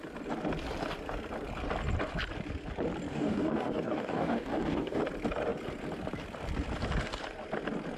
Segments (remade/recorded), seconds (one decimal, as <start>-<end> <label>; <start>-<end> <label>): 0.0-3.1 recorded; 3.1-5.0 remade; 5.0-8.0 recorded